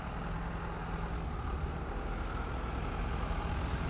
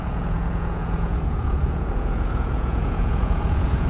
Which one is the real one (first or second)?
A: first